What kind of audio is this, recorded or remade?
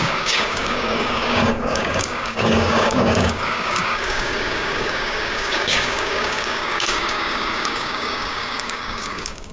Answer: remade